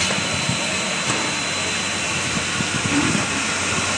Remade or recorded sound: recorded